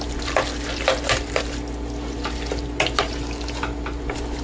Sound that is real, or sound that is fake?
real